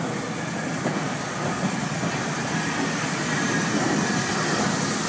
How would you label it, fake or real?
real